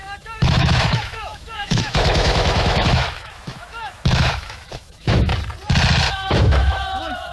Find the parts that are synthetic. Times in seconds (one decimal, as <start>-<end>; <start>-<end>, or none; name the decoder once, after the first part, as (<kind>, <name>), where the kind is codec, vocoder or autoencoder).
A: 0.0-5.3 (autoencoder, DAC-VAE); 6.1-7.3

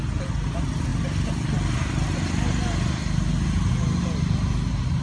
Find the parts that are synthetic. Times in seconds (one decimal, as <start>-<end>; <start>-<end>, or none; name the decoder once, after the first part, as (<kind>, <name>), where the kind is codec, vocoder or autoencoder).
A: none

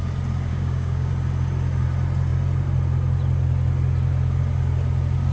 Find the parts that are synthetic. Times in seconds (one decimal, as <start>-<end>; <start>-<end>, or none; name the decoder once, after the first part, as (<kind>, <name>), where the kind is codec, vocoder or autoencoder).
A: 0.5-1.1 (codec, DAC)

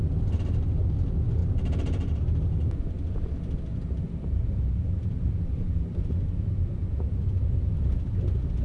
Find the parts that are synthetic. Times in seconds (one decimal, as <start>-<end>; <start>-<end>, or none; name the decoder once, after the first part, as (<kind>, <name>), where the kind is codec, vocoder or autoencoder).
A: 1.4-2.2 (vocoder, BigVGAN v2); 3.7-6.0

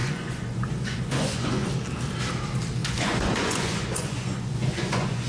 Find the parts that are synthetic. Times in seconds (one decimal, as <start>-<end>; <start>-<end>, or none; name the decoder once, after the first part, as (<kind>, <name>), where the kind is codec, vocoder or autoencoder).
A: 0.0-1.7 (vocoder, Vocos); 2.8-5.3

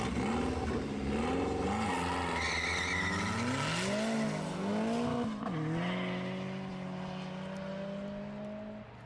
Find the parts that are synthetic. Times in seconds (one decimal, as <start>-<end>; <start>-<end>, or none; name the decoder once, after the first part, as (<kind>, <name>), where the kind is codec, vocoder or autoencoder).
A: none

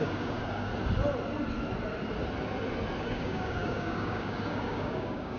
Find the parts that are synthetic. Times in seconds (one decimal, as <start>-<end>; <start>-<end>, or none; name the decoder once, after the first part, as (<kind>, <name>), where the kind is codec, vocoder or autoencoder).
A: 0.0-0.7 (codec, DAC); 3.0-5.4

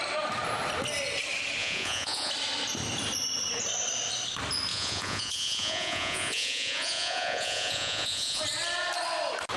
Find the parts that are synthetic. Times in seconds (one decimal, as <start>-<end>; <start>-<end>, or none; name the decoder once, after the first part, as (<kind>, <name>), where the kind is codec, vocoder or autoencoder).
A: 1.6-2.3 (vocoder, Vocos); 4.7-8.4